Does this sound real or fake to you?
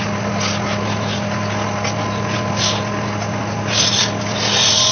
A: real